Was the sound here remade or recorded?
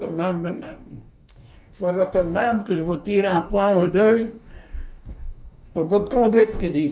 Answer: remade